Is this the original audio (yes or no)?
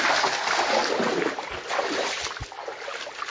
yes